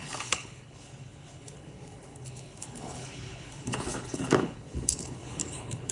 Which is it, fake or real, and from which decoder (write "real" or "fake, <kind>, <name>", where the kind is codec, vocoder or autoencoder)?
fake, codec, HILCodec